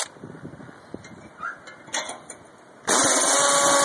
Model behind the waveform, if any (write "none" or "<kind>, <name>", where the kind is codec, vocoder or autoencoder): none